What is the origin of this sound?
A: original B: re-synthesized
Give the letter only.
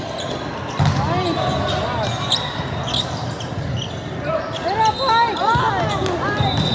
A